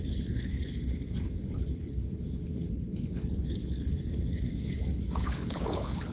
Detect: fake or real fake